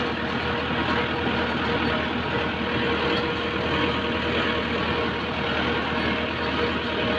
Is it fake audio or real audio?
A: real